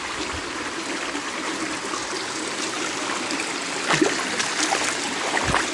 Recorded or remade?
recorded